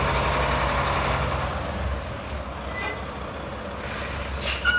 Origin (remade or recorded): recorded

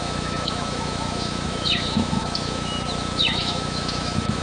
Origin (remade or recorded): remade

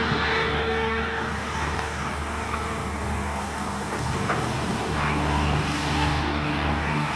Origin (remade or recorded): remade